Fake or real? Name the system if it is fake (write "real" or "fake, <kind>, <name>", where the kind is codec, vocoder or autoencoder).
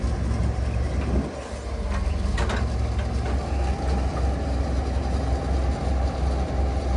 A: real